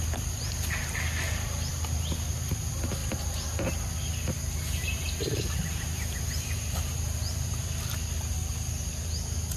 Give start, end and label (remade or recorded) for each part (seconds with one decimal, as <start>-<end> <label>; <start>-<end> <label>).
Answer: 0.0-9.6 recorded